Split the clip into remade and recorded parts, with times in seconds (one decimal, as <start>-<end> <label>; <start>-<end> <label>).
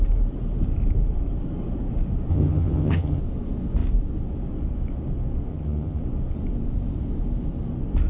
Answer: 0.0-2.3 recorded; 2.3-3.2 remade; 3.2-5.5 recorded; 5.5-6.0 remade; 6.0-8.1 recorded